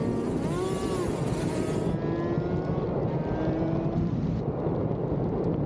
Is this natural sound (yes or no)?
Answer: yes